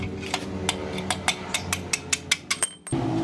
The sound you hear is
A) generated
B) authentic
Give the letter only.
B